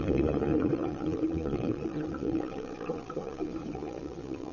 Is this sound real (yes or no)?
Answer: no